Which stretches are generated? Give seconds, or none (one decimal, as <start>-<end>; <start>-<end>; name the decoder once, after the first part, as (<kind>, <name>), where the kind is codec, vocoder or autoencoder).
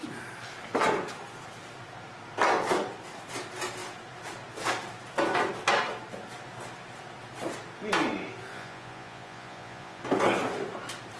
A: 8.5-10.0 (vocoder, Vocos)